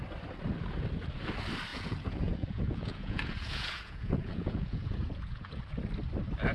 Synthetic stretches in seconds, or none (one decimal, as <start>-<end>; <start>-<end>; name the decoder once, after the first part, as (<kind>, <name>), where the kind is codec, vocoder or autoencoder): 1.7-5.6 (vocoder, Vocos)

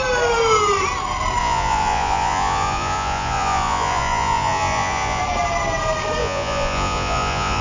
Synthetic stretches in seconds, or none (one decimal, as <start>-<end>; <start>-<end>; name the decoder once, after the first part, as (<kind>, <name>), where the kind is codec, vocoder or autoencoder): 1.4-5.2 (vocoder, Vocos); 6.2-7.6